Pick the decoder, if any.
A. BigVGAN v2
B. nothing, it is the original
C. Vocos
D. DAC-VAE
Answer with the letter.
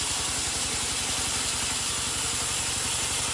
B